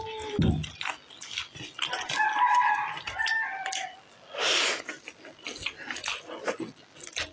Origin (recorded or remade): recorded